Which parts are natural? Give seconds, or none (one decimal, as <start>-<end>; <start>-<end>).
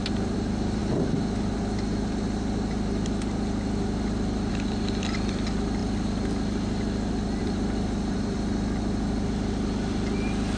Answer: 0.8-4.5; 5.8-7.4